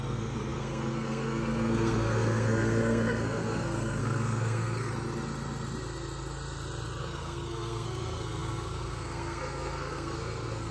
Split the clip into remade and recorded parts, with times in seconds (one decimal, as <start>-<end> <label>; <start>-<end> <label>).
0.0-4.9 remade; 4.9-7.0 recorded; 7.0-10.7 remade